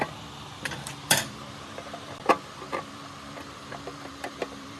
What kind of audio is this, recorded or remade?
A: remade